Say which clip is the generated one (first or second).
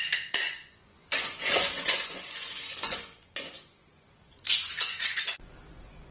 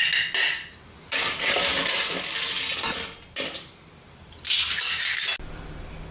first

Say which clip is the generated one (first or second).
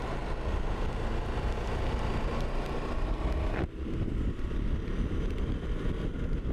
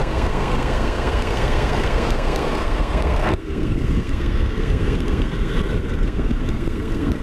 second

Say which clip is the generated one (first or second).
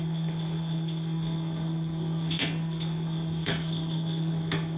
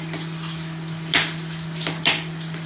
first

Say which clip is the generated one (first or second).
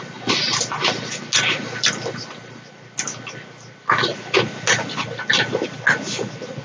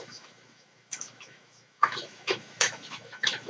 second